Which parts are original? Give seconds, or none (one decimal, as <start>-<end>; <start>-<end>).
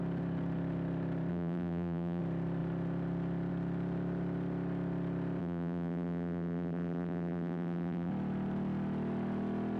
0.0-1.3; 2.2-5.4; 8.1-9.8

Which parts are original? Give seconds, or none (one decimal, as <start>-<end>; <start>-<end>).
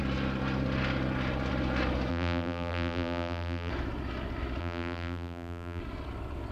0.0-2.1; 3.7-4.6; 5.8-6.5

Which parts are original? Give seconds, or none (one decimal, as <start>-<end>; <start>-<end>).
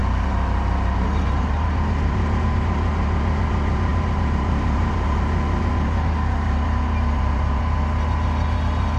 0.0-3.9; 4.9-9.0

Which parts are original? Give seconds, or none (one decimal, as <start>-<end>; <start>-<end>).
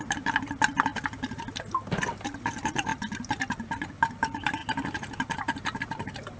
0.9-2.0; 2.9-3.8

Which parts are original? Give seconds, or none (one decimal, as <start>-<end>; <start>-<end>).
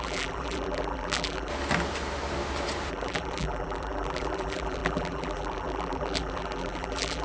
1.5-2.9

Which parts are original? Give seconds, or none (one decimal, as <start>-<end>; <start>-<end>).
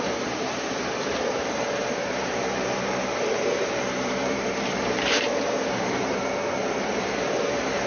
6.2-6.8